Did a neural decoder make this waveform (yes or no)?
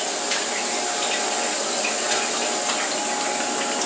no